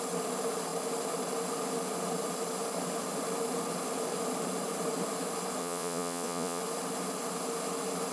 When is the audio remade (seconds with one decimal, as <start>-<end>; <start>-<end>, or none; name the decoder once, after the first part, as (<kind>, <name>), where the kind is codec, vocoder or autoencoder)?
5.6-6.6 (vocoder, Vocos)